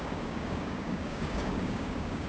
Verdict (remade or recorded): remade